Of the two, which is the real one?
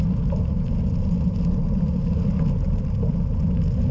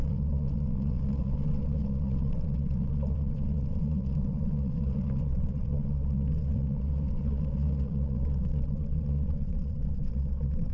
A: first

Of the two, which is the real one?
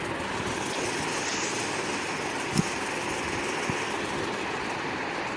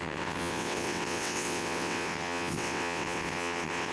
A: first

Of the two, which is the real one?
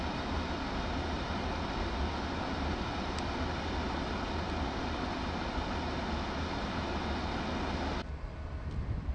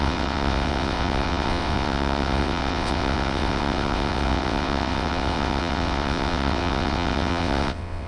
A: first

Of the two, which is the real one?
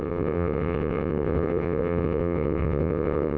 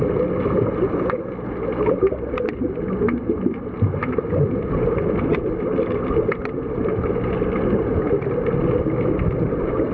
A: second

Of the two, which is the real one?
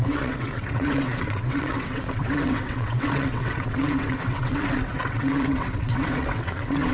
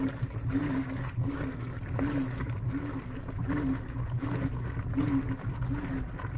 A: second